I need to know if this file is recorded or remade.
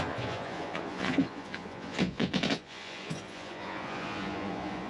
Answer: remade